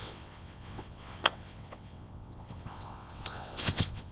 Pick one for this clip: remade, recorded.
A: remade